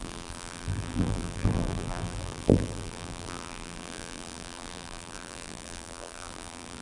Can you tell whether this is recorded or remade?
remade